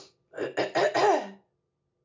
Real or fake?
real